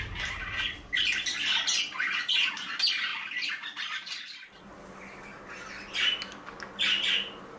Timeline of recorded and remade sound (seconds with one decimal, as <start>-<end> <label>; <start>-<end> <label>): 0.0-7.6 recorded